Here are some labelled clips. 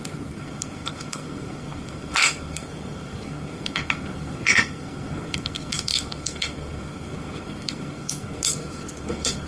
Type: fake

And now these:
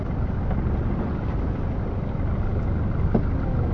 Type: real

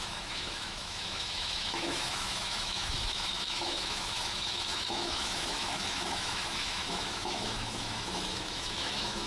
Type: fake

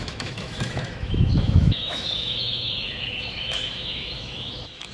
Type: fake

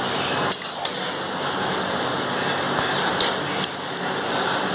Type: real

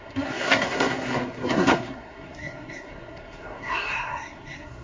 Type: fake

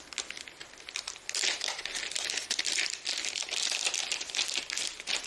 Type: real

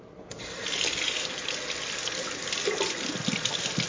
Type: real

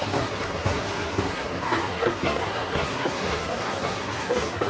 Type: fake